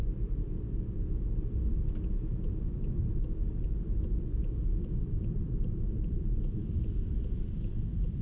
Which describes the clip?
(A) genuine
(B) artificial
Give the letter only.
B